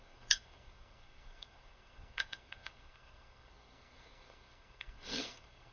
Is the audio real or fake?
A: fake